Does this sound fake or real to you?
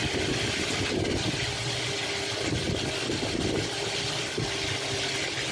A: real